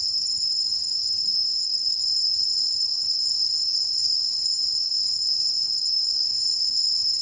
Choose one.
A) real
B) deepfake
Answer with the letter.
B